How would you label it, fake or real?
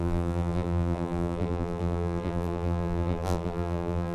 fake